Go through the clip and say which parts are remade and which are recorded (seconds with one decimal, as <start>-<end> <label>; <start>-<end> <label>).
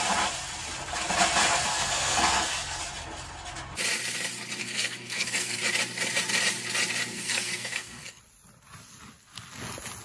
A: 0.0-1.7 recorded; 1.7-2.8 remade; 2.8-4.6 recorded; 4.6-5.6 remade; 5.6-7.1 recorded; 7.1-8.2 remade; 8.2-10.0 recorded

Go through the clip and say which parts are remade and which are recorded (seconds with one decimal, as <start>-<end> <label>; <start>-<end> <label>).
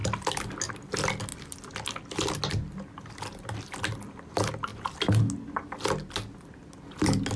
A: 0.0-7.4 recorded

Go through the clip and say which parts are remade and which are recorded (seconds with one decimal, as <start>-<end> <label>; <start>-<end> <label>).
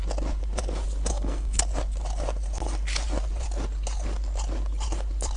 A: 0.0-1.1 recorded; 1.1-1.6 remade; 1.6-5.4 recorded